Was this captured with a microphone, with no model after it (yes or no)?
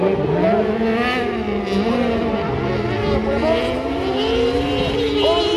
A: yes